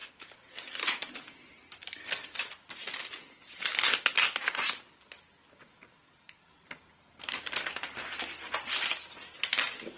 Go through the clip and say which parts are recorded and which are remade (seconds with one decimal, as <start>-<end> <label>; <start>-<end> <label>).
0.0-10.0 recorded